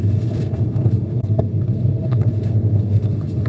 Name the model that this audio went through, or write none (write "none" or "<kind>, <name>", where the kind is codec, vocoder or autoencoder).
codec, SNAC